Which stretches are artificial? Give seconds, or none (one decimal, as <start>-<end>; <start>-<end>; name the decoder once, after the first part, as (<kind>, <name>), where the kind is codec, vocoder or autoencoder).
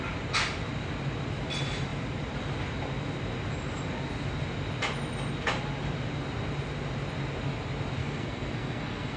8.0-9.2 (codec, SNAC)